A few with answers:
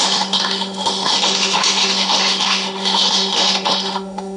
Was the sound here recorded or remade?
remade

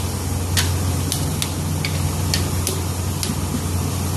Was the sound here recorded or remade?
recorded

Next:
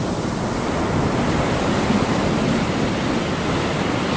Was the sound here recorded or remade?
recorded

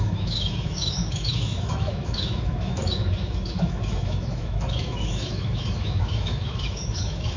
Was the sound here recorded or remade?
remade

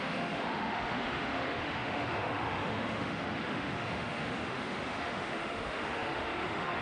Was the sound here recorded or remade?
remade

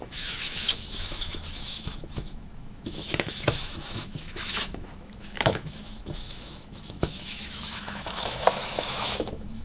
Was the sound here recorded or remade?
remade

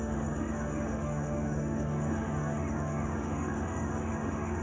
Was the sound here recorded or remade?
remade